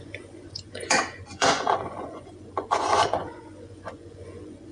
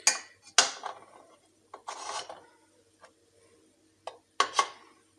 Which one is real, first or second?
second